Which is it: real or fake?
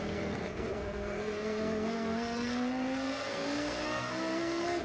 fake